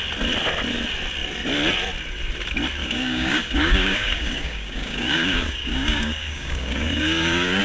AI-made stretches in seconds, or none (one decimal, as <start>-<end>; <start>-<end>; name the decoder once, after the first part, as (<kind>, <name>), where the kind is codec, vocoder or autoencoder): 2.8-7.6 (codec, DAC)